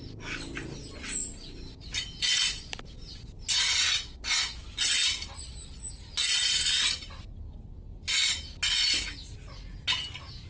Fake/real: real